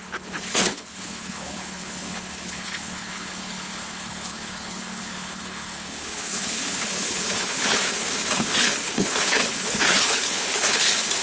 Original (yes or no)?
no